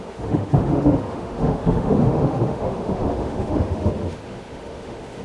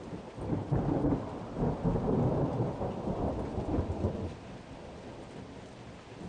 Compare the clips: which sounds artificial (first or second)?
first